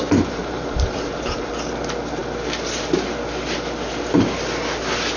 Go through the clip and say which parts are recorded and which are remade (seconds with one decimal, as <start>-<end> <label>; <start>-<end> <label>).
0.0-0.4 recorded; 0.4-1.5 remade; 1.5-5.2 recorded